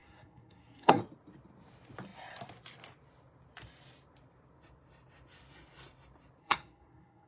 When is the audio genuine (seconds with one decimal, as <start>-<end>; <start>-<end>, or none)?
1.0-6.4